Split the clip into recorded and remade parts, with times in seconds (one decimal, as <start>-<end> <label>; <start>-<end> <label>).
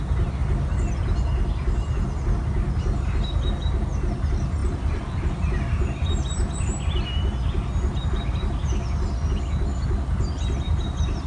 0.0-4.6 recorded; 4.6-6.7 remade; 6.7-11.3 recorded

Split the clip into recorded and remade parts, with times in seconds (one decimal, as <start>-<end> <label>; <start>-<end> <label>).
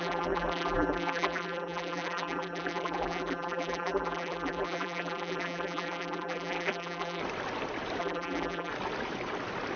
0.0-7.2 remade; 7.2-8.0 recorded; 8.0-8.7 remade; 8.7-9.8 recorded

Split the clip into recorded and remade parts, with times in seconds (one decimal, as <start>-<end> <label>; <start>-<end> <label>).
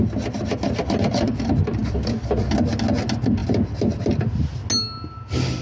0.0-1.8 recorded; 1.8-2.7 remade; 2.7-5.6 recorded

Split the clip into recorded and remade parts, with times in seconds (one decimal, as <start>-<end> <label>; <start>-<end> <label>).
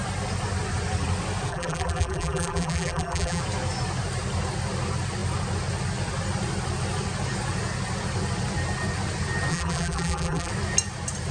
0.0-1.5 recorded; 1.5-3.4 remade; 3.4-9.5 recorded; 9.5-10.5 remade; 10.5-11.3 recorded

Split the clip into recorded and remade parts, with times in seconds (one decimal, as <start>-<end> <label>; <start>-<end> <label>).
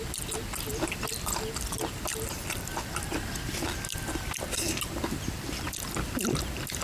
0.0-0.7 recorded; 0.7-1.7 remade; 1.7-2.1 recorded; 2.1-2.8 remade; 2.8-6.8 recorded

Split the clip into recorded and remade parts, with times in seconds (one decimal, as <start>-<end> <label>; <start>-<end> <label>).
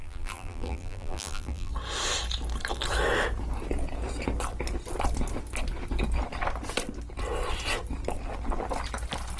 0.0-1.7 remade; 1.7-9.4 recorded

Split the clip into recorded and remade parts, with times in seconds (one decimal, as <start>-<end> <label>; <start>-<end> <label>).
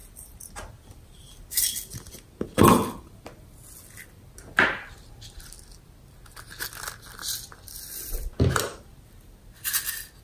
0.0-10.2 recorded